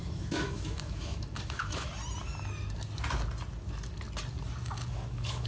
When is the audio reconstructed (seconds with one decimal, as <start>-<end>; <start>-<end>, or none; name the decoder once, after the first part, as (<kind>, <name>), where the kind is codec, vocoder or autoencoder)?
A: 0.0-1.9 (autoencoder, DAC-VAE); 5.1-5.5